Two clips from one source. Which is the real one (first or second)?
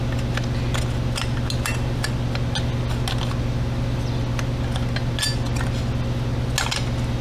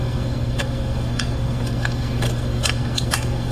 first